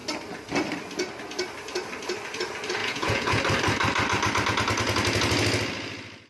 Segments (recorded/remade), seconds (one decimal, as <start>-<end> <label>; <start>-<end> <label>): 0.0-2.8 recorded; 2.8-3.4 remade; 3.4-6.3 recorded

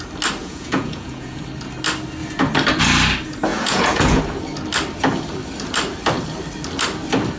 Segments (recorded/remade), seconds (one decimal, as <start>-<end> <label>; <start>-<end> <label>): 0.0-0.4 recorded; 0.4-1.4 remade; 1.4-3.5 recorded; 3.5-4.2 remade; 4.2-7.4 recorded

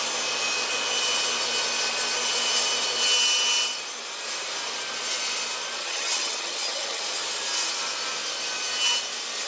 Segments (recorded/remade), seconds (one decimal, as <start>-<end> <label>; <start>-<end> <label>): 0.0-5.8 recorded; 5.8-7.0 remade; 7.0-9.5 recorded

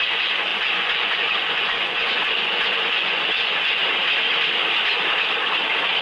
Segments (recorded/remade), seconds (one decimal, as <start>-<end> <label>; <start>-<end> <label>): 0.0-3.8 remade; 3.8-6.0 recorded

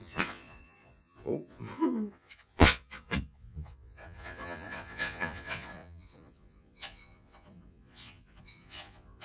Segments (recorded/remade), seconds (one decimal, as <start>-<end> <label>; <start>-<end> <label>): 0.0-9.2 remade

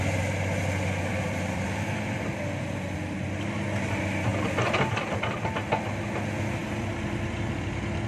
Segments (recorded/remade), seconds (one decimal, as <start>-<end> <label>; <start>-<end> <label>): 0.0-8.1 recorded